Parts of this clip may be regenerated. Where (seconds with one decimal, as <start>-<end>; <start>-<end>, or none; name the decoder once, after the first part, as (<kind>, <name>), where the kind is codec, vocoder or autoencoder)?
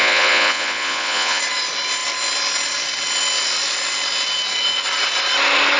0.0-1.4 (vocoder, Vocos)